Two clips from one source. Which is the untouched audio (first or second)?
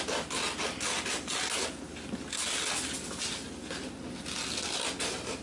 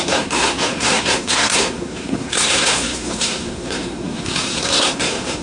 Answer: first